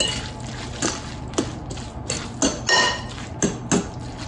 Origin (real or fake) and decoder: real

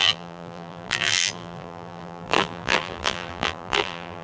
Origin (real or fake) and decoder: fake, vocoder, BigVGAN v2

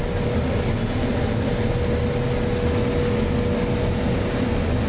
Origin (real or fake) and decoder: real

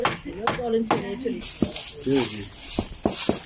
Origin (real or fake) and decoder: real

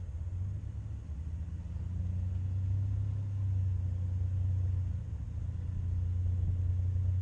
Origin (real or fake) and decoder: real